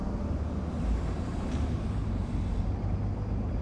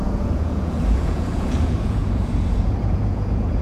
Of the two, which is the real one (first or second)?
first